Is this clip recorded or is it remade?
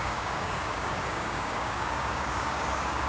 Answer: remade